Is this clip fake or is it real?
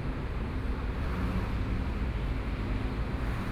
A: real